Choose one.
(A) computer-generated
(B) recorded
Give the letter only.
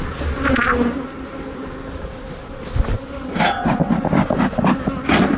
B